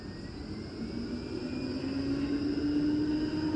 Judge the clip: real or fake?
real